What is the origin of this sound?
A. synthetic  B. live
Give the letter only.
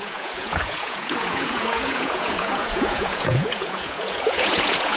A